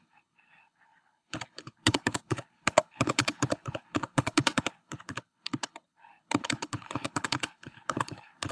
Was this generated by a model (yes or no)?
yes